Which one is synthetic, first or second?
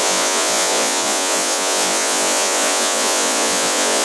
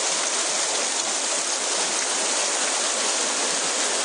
first